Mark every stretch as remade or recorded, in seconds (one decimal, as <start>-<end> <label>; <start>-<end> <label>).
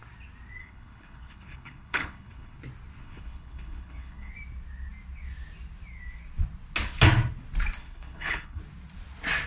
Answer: 0.0-0.6 recorded; 0.6-2.6 remade; 2.6-3.0 recorded; 3.0-4.3 remade; 4.3-7.8 recorded; 7.8-8.6 remade; 8.6-9.5 recorded